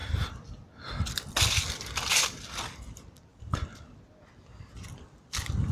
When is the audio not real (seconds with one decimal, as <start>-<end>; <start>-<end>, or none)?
0.0-0.7